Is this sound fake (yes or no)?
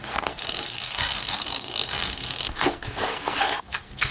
yes